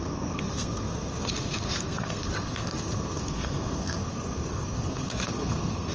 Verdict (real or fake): fake